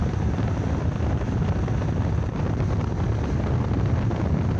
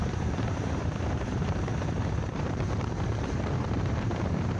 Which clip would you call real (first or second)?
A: first